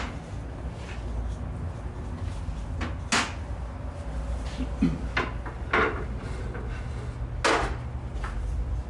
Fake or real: real